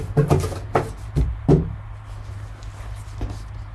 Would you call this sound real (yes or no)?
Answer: yes